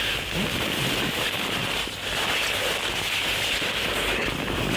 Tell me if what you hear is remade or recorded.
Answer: recorded